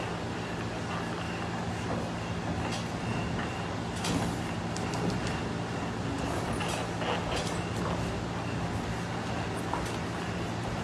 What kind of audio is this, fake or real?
real